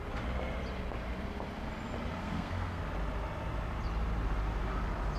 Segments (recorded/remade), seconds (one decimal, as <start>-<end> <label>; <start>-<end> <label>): 0.0-2.2 recorded; 2.2-2.8 remade; 2.8-5.2 recorded